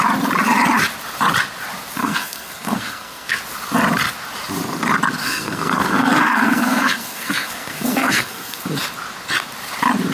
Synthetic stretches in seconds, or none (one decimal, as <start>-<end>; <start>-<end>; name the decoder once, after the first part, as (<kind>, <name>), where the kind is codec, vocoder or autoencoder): 2.0-3.4 (codec, SNAC); 5.2-8.6